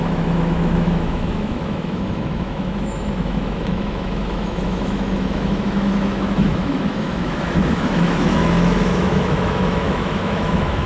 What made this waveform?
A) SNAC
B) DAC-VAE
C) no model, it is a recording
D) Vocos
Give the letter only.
B